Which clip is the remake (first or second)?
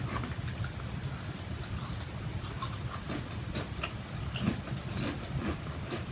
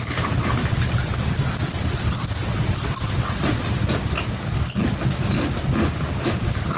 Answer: first